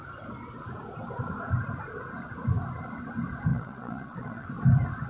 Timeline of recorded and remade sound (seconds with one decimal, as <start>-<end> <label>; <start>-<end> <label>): 0.0-3.5 recorded; 3.5-4.5 remade; 4.5-5.1 recorded